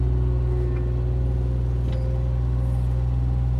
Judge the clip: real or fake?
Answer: real